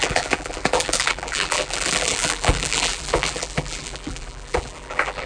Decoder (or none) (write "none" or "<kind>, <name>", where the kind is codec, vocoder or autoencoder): vocoder, BigVGAN v2